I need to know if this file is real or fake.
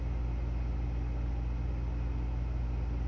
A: real